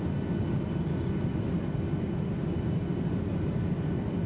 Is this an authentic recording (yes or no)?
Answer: yes